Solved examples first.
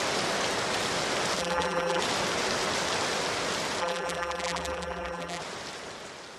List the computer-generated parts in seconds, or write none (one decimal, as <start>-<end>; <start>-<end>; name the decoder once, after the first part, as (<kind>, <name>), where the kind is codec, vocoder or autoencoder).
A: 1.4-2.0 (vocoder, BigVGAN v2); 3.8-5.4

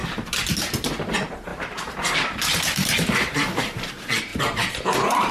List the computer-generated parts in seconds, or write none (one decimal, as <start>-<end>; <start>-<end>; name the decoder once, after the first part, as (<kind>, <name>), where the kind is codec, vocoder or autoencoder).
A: 1.5-3.9 (vocoder, BigVGAN v2); 4.3-5.3

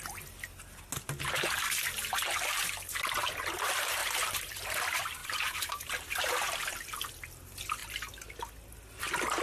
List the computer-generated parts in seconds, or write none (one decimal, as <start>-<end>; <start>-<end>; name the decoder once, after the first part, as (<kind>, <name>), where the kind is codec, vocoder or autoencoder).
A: 4.0-4.8 (vocoder, BigVGAN v2); 5.2-7.1

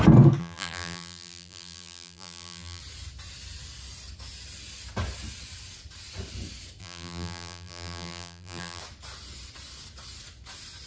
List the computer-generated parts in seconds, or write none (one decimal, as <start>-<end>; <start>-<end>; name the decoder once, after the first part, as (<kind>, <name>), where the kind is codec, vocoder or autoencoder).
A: 0.4-2.8 (vocoder, BigVGAN v2); 6.8-8.8

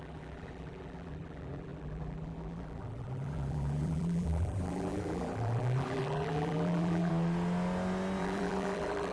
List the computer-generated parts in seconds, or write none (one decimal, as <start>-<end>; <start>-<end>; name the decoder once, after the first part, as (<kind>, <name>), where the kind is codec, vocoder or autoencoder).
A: 0.0-7.1 (vocoder, BigVGAN v2); 8.2-9.1

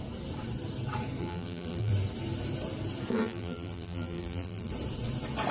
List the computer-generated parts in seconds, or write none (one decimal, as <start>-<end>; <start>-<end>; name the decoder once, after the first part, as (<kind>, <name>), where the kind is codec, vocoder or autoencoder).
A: 1.2-1.9 (vocoder, BigVGAN v2); 3.1-4.7

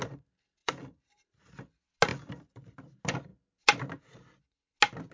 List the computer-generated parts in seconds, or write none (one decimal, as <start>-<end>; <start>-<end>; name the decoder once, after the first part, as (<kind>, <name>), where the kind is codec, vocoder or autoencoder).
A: 0.6-1.2 (vocoder, BigVGAN v2); 2.1-2.8

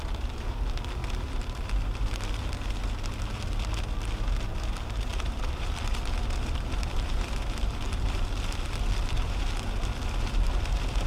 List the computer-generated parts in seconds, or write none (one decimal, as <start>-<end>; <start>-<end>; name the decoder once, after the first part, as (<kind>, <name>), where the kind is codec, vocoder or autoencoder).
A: 1.0-2.7 (vocoder, BigVGAN v2); 5.1-8.3